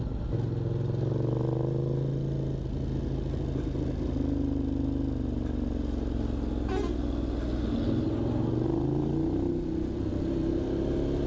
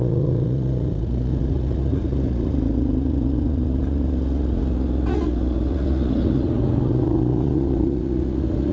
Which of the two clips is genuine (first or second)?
first